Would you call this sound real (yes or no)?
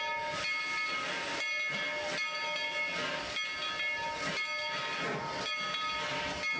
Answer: yes